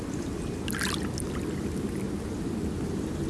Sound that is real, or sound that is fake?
real